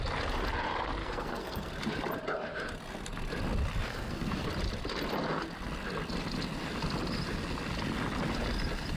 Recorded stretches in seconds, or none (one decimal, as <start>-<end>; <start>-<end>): 0.0-1.0; 1.7-3.9; 4.5-9.0